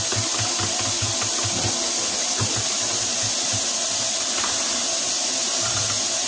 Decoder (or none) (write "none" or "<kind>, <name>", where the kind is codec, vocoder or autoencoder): none